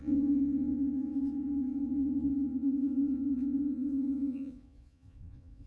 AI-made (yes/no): yes